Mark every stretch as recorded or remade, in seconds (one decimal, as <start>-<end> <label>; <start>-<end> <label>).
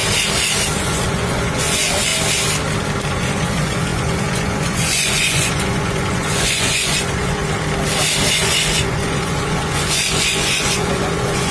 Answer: 0.0-0.8 recorded; 0.8-2.1 remade; 2.1-3.1 recorded; 3.1-7.4 remade; 7.4-8.3 recorded; 8.3-11.5 remade